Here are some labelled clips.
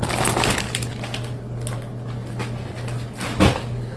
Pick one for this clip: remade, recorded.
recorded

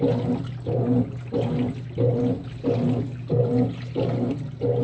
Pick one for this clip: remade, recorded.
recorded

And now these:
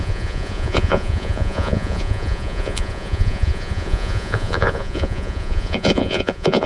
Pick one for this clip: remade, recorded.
remade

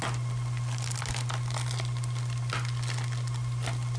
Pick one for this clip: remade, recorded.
recorded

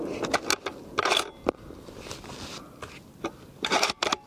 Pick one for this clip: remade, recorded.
recorded